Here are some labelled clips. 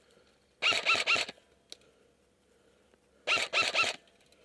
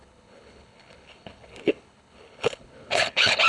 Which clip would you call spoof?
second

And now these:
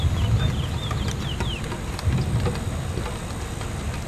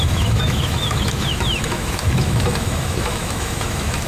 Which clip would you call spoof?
second